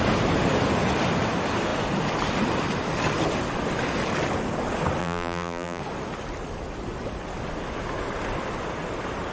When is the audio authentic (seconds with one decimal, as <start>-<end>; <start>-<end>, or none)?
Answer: 0.0-5.0; 5.8-9.3